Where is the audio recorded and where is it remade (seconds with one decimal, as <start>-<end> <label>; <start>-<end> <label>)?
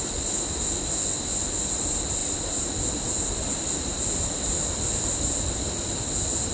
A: 0.0-6.5 recorded